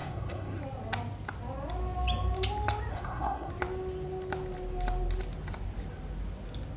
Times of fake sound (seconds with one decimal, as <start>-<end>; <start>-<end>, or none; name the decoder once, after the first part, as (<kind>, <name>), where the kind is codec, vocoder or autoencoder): 0.0-0.6 (codec, SNAC); 2.9-3.5